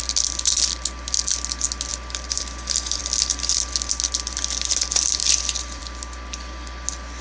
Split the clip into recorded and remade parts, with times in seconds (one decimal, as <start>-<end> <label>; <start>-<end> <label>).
0.0-1.9 recorded; 1.9-2.4 remade; 2.4-5.2 recorded; 5.2-5.8 remade; 5.8-7.2 recorded

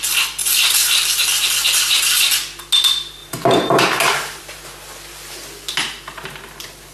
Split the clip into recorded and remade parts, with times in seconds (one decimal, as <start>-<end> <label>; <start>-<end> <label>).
0.0-3.2 recorded; 3.2-4.6 remade; 4.6-6.9 recorded

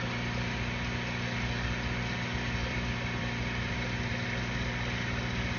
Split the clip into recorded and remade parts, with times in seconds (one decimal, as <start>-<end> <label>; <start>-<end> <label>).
0.0-2.6 recorded; 2.6-4.4 remade; 4.4-5.6 recorded

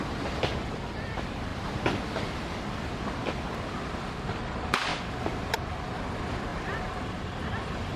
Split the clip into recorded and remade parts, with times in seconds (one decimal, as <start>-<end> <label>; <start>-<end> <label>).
0.0-4.9 recorded; 4.9-5.4 remade; 5.4-6.5 recorded; 6.5-7.2 remade; 7.2-8.0 recorded

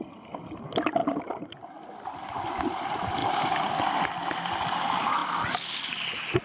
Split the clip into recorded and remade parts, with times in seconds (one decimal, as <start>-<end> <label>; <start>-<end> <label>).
0.0-1.0 recorded; 1.0-1.7 remade; 1.7-6.4 recorded

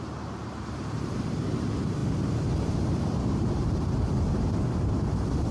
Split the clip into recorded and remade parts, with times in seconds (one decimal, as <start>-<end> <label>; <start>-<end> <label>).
0.0-5.5 remade

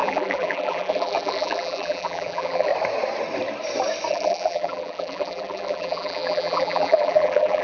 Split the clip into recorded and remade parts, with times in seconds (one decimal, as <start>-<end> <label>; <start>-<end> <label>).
0.0-2.7 remade; 2.7-4.1 recorded; 4.1-7.6 remade

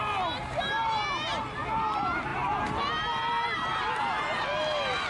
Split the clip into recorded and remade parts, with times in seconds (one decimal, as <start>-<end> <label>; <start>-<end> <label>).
0.0-5.1 recorded